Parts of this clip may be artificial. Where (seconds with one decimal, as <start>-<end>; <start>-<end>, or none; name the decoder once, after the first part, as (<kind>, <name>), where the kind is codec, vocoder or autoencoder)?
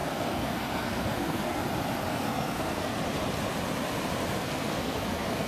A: 0.0-1.6 (codec, SNAC); 2.1-2.9; 4.4-5.5